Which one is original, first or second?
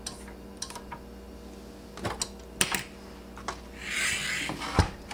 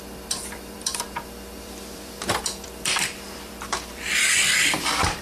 first